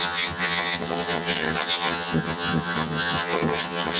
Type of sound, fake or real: fake